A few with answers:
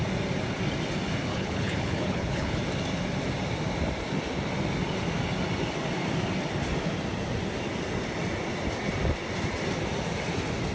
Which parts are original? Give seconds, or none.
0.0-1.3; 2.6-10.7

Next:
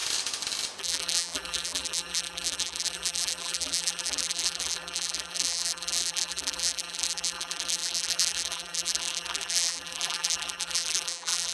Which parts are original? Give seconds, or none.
0.0-0.8

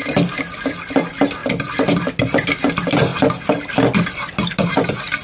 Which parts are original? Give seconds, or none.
0.0-5.2

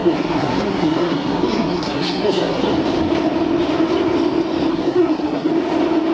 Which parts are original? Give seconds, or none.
2.7-4.7; 5.5-6.1

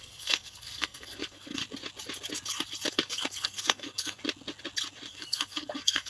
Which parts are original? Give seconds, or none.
1.6-2.9; 4.2-5.1